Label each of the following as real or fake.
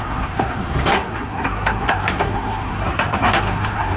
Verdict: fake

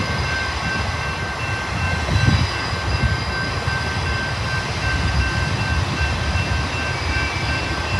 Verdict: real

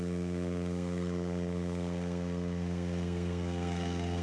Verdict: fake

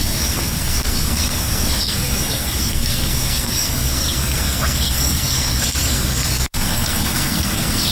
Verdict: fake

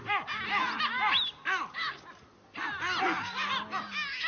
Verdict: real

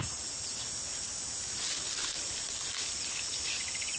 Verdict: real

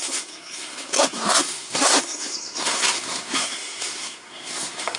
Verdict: fake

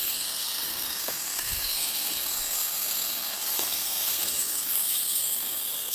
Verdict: fake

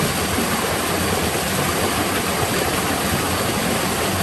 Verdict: real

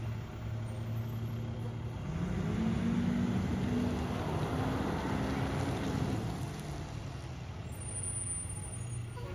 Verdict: real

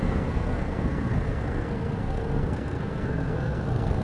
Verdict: fake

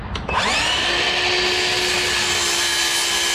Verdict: real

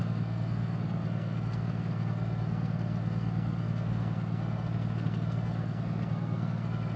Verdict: fake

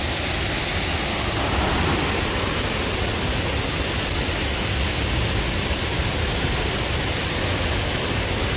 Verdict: real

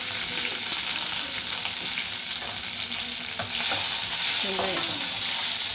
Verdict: real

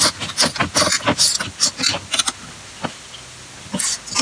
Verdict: real